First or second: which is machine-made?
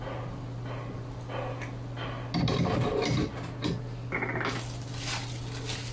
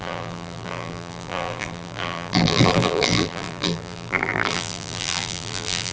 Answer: second